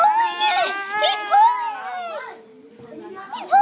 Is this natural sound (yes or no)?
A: yes